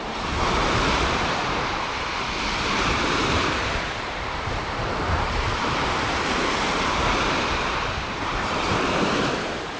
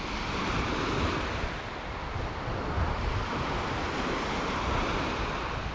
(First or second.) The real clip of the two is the second